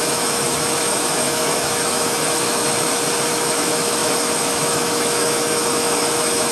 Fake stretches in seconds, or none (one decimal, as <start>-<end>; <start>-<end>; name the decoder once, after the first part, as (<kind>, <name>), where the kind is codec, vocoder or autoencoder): 0.0-2.6 (autoencoder, DAC-VAE); 3.3-6.5